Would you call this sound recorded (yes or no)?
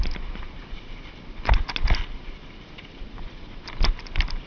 yes